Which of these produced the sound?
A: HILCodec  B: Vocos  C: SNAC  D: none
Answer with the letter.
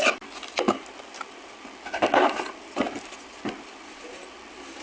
D